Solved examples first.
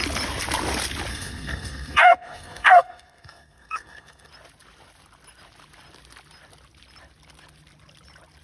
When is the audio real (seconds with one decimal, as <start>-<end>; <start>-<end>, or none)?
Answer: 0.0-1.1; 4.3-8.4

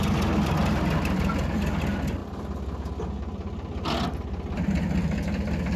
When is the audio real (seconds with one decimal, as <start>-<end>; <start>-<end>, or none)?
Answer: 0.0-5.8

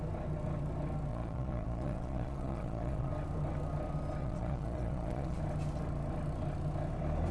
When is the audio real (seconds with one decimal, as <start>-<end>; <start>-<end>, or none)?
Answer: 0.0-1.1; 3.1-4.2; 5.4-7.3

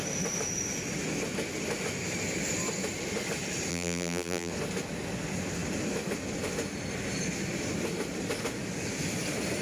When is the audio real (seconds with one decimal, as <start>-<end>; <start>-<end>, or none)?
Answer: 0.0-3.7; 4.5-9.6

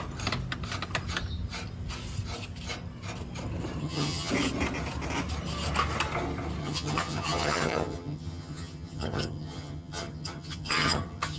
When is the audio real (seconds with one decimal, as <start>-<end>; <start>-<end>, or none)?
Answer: 0.0-3.8; 4.3-6.6

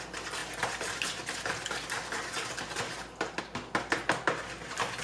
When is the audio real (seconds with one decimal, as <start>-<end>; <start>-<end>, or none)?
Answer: 0.0-5.0